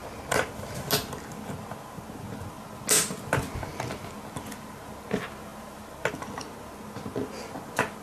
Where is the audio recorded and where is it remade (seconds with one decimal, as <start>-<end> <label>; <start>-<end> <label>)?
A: 0.0-8.0 recorded